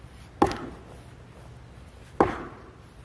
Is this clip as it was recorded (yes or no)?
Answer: yes